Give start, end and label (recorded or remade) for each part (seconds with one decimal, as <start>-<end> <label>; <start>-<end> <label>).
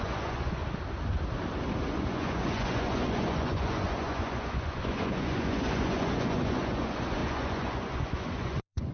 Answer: 0.0-0.6 remade; 0.6-1.9 recorded; 1.9-8.9 remade